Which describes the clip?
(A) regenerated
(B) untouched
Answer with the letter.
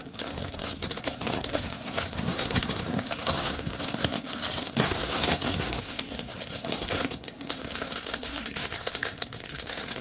A